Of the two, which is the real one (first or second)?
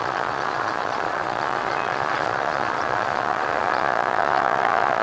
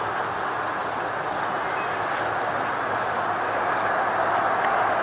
second